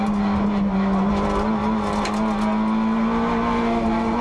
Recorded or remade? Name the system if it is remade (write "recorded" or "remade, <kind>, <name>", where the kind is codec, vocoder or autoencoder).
recorded